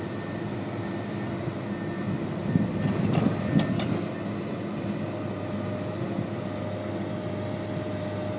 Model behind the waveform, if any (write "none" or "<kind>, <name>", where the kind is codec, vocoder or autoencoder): none